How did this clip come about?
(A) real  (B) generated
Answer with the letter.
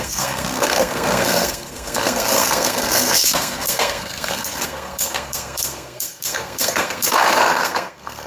B